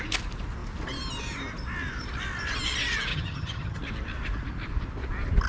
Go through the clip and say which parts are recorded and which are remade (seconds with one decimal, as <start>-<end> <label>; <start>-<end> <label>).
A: 0.0-3.1 recorded; 3.1-3.8 remade; 3.8-5.5 recorded